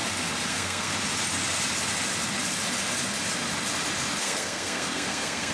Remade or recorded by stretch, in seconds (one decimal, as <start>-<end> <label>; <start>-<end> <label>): 0.0-0.5 recorded; 0.5-0.9 remade; 0.9-4.2 recorded; 4.2-5.5 remade